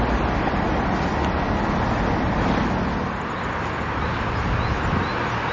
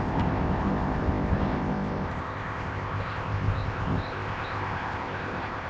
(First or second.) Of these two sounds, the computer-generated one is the second